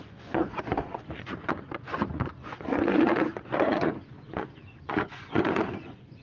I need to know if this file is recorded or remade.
remade